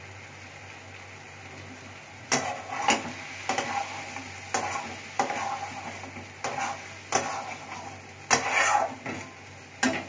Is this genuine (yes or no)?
yes